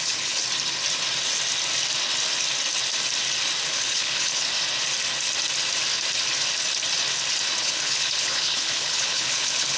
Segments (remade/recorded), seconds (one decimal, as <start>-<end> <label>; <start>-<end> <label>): 0.0-0.4 remade; 0.4-3.7 recorded; 3.7-4.5 remade; 4.5-7.6 recorded; 7.6-9.8 remade